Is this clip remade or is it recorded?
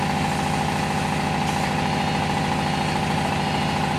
recorded